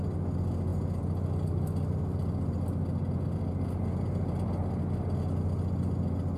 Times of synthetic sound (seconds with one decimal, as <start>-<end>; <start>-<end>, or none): none